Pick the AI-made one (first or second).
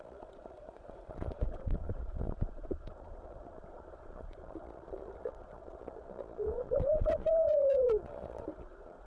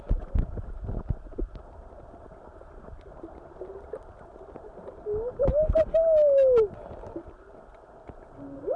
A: first